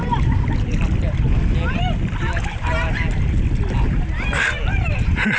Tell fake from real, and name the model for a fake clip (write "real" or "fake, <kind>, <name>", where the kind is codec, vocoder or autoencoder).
real